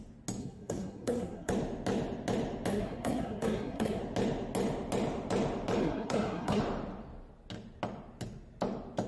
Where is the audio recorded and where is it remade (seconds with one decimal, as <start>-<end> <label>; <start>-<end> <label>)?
0.0-0.4 recorded; 0.4-1.5 remade; 1.5-2.7 recorded; 2.7-4.0 remade; 4.0-5.8 recorded; 5.8-6.6 remade; 6.6-9.1 recorded